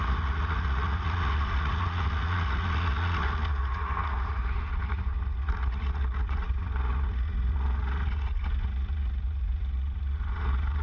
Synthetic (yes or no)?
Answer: yes